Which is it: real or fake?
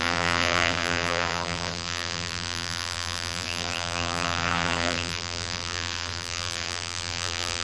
fake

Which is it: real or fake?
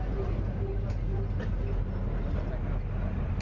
real